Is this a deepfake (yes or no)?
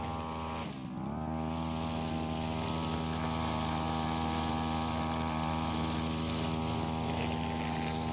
no